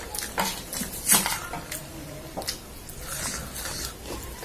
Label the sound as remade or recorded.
recorded